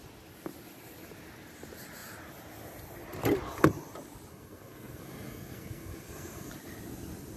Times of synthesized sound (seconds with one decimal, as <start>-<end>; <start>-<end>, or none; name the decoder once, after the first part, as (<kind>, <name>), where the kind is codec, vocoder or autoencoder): 4.3-6.5 (codec, SNAC)